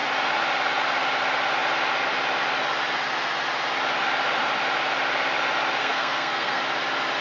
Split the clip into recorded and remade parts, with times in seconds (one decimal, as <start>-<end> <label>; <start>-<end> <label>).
0.0-5.8 recorded; 5.8-6.6 remade; 6.6-7.2 recorded